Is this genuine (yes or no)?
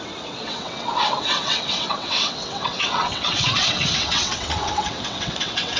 no